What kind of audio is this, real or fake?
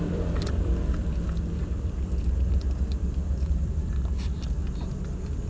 fake